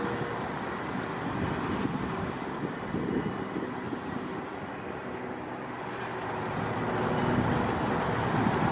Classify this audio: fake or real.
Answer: real